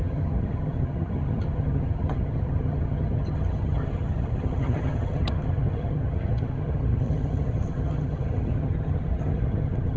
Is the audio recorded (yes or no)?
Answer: no